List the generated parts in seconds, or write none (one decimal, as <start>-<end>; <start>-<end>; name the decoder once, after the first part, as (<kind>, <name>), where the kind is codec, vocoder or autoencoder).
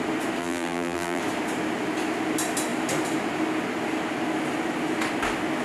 0.4-1.2 (vocoder, BigVGAN v2)